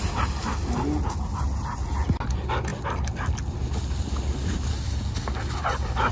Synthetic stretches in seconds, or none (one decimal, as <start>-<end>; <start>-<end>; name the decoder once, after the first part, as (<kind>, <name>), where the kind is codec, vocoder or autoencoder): none